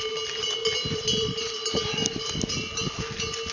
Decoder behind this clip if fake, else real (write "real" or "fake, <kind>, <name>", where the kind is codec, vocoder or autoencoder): real